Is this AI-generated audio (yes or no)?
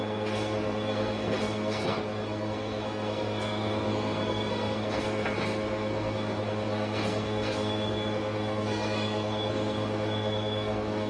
yes